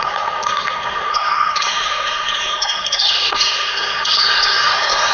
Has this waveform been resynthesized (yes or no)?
yes